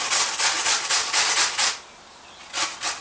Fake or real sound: real